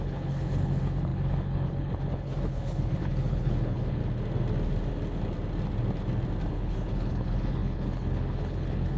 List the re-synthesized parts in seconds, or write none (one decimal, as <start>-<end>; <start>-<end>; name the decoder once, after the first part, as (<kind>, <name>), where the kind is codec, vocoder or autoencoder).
0.0-4.0 (codec, HILCodec); 6.5-9.0